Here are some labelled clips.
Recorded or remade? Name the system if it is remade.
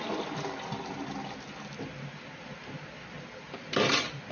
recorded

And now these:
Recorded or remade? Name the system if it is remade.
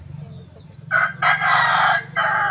recorded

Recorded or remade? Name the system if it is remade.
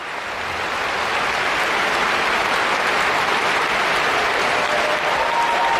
recorded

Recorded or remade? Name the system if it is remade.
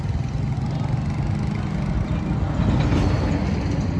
recorded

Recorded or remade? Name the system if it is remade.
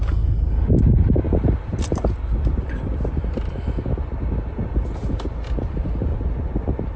recorded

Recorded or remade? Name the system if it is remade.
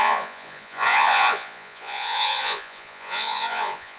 remade, vocoder, Vocos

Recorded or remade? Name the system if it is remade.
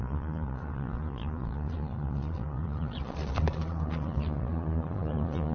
remade, vocoder, Vocos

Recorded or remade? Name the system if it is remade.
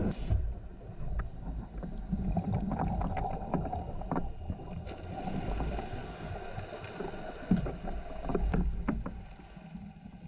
recorded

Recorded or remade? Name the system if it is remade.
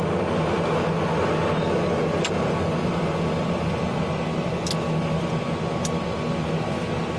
recorded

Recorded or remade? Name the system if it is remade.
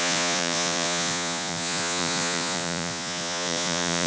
remade, vocoder, Vocos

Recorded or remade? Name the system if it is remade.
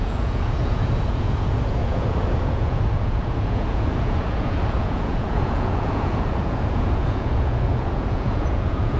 remade, vocoder, Vocos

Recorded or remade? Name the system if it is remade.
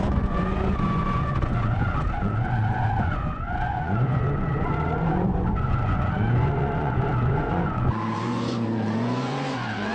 remade, vocoder, Vocos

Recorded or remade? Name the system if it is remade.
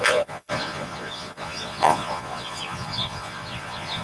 remade, vocoder, Vocos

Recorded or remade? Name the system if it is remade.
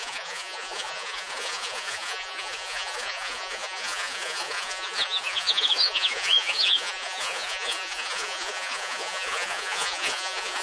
remade, vocoder, Vocos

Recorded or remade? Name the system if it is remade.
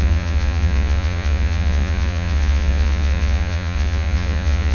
remade, vocoder, Vocos